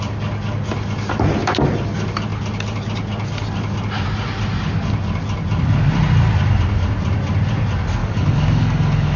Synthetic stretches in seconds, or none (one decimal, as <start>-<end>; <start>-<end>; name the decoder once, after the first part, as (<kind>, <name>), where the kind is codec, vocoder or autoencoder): 8.0-9.2 (codec, DAC)